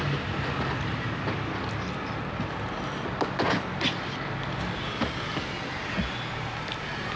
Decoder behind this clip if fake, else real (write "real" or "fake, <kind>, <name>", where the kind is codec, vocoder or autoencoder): real